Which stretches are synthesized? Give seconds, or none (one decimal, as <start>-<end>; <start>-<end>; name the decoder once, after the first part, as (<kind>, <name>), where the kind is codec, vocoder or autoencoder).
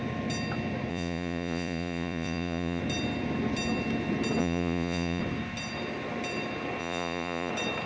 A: 0.9-2.8 (vocoder, Vocos); 4.4-5.2; 6.8-7.5